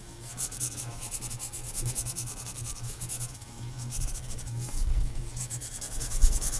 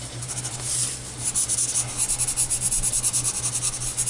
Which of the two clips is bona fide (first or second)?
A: second